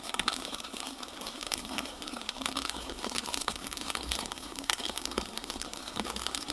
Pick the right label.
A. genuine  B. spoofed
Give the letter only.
B